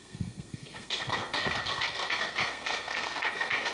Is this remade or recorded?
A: remade